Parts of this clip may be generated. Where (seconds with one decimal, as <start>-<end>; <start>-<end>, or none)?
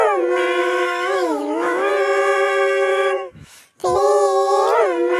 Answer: 0.6-1.9; 2.9-3.6